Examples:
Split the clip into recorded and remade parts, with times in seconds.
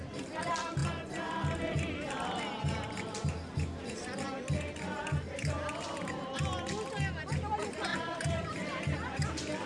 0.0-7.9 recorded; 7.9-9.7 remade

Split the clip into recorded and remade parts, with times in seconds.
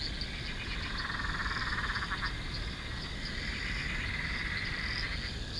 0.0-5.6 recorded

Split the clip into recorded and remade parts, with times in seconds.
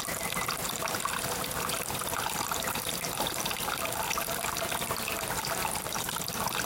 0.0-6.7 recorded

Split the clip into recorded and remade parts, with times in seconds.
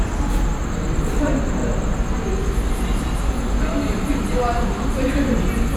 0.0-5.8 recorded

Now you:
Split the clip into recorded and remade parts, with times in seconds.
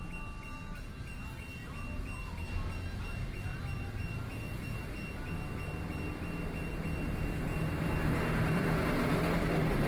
0.0-7.5 recorded; 7.5-8.7 remade; 8.7-9.9 recorded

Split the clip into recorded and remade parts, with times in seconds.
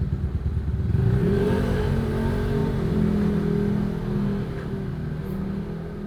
0.0-1.2 recorded; 1.2-2.1 remade; 2.1-6.1 recorded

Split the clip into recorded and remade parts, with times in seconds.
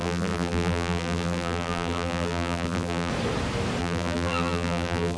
0.0-3.1 remade; 3.1-3.8 recorded; 3.8-5.2 remade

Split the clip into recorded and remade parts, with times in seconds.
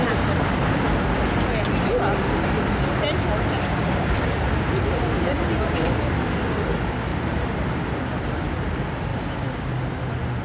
0.0-7.1 recorded; 7.1-7.6 remade; 7.6-10.4 recorded